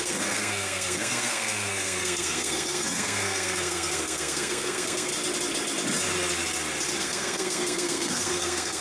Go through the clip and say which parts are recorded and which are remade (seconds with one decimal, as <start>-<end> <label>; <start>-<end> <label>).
0.0-5.1 remade; 5.1-7.0 recorded; 7.0-8.8 remade